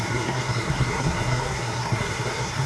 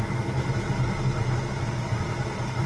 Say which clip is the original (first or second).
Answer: second